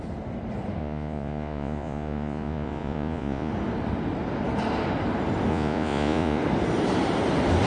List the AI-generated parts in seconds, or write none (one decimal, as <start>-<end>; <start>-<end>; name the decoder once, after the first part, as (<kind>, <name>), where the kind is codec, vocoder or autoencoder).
0.8-3.5 (vocoder, Vocos); 5.5-6.4